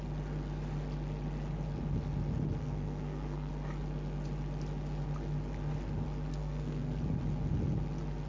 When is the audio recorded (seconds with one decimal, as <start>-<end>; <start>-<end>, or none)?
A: 0.0-2.6; 3.5-6.3; 7.0-8.3